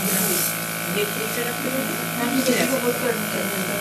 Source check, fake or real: real